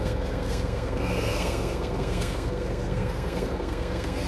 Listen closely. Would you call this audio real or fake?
fake